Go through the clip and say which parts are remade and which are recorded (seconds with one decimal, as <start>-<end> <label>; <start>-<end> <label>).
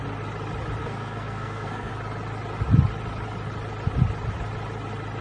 0.0-0.8 recorded; 0.8-1.9 remade; 1.9-5.2 recorded